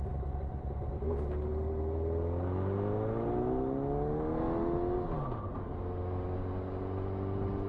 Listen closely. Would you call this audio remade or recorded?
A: recorded